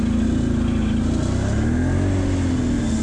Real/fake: real